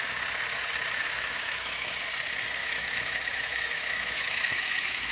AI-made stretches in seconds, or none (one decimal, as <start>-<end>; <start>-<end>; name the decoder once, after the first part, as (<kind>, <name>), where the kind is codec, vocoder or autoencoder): 1.0-1.9 (autoencoder, DAC-VAE); 2.6-5.1